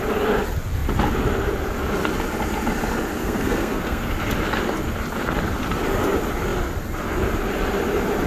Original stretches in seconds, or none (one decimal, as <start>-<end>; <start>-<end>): 0.0-3.2; 4.2-8.3